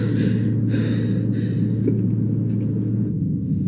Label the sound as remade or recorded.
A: recorded